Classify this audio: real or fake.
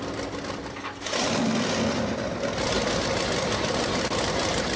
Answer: real